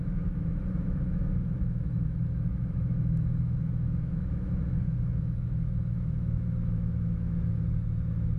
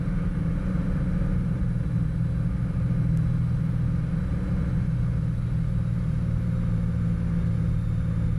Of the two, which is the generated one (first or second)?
first